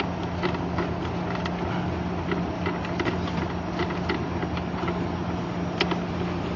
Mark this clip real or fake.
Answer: real